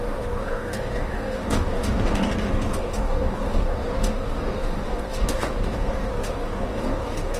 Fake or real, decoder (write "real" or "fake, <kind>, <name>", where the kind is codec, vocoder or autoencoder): fake, codec, DAC